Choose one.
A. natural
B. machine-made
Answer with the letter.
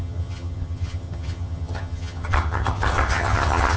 B